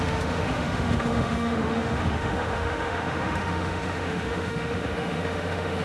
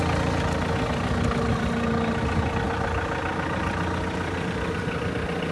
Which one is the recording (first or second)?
second